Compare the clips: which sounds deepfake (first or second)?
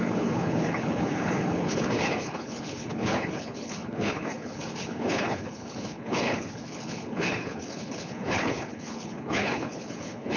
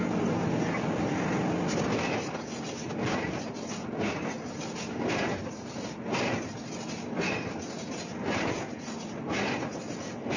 first